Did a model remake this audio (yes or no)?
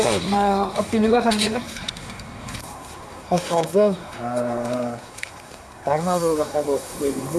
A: yes